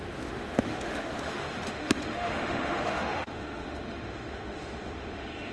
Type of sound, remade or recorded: remade